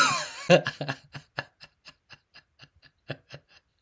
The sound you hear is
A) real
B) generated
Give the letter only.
A